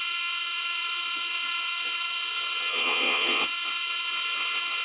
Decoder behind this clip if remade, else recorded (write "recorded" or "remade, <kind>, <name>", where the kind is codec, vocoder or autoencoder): remade, vocoder, Vocos